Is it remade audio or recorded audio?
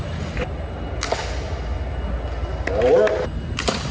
recorded